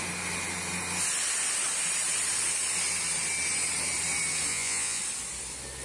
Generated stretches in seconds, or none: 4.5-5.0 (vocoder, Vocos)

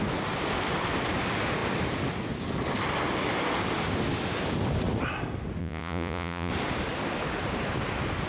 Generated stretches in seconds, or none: 5.6-6.5 (vocoder, Vocos)

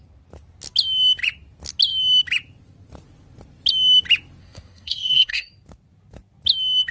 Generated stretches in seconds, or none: 4.4-5.5 (codec, SNAC)